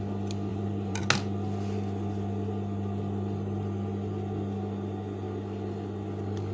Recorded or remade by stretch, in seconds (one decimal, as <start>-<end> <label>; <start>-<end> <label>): 0.0-0.5 recorded; 0.5-1.0 remade; 1.0-6.5 recorded